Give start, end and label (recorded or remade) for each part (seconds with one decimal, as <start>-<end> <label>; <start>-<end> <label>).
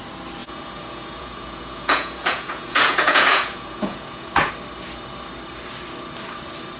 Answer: 0.0-0.4 recorded; 0.4-4.5 remade; 4.5-6.8 recorded